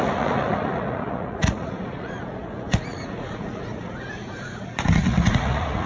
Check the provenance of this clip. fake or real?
fake